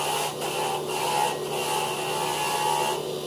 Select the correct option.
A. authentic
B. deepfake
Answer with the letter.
A